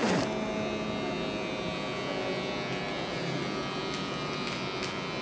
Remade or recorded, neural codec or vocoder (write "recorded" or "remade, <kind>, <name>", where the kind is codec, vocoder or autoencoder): recorded